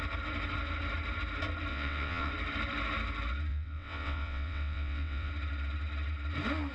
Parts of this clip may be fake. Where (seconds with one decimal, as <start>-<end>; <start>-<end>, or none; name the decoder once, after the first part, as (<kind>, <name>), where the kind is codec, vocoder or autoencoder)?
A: 1.7-2.3 (vocoder, WaveNeXt); 3.5-5.3